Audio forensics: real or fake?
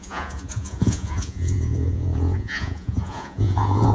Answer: fake